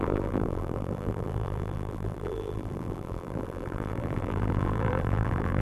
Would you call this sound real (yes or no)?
no